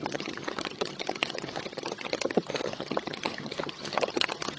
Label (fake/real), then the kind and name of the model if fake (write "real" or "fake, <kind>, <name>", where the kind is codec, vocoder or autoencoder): fake, vocoder, HiFi-GAN